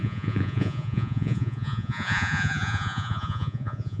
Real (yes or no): no